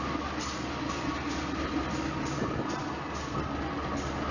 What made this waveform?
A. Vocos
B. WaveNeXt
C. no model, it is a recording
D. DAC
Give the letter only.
C